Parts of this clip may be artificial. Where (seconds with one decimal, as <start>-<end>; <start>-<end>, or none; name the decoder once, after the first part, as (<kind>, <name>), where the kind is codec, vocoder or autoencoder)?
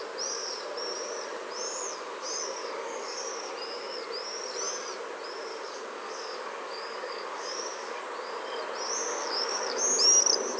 2.6-3.5 (codec, DAC); 5.5-8.0; 9.1-9.8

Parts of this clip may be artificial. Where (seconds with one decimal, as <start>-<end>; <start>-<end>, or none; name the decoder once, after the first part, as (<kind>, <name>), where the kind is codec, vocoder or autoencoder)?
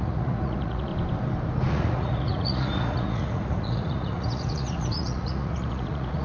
0.0-0.9 (vocoder, Vocos); 1.7-6.2